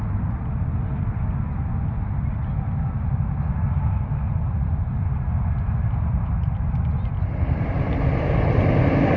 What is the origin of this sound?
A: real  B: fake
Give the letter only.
A